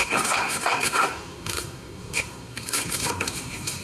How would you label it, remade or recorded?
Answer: remade